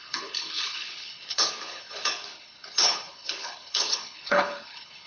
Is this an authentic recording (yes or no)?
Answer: no